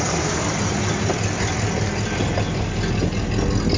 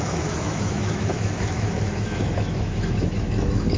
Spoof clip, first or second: second